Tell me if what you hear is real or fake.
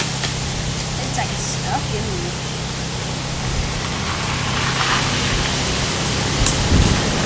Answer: real